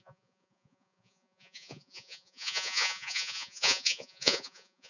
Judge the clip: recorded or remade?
remade